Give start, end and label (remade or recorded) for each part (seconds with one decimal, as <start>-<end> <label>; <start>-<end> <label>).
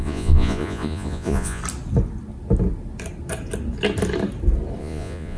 0.0-1.6 remade; 1.6-4.8 recorded; 4.8-5.4 remade